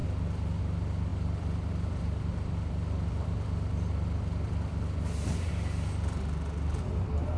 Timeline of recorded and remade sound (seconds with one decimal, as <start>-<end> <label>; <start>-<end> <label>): 0.0-1.1 recorded; 1.1-5.5 remade; 5.5-7.4 recorded